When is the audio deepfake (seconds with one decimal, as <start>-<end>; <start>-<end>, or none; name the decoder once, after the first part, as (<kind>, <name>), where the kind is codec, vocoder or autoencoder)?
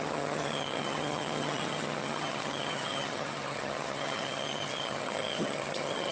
0.0-6.1 (vocoder, HiFi-GAN)